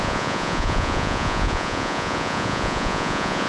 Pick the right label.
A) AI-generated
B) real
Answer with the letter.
A